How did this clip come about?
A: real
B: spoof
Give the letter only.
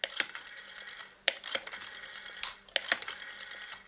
A